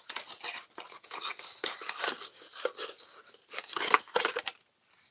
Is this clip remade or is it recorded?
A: recorded